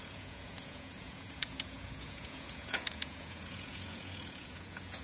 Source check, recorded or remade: remade